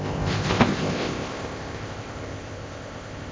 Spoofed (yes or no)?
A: yes